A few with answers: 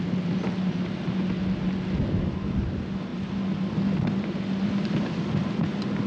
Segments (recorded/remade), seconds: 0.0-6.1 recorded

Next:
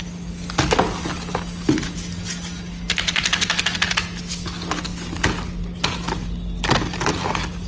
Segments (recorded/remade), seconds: 0.0-7.7 recorded

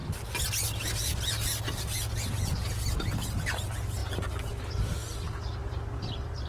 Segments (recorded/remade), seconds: 0.0-5.6 recorded; 5.6-6.5 remade

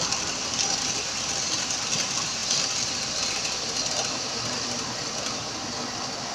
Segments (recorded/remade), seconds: 0.0-6.3 recorded

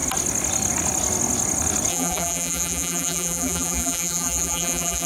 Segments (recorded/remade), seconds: 0.0-1.9 recorded; 1.9-5.1 remade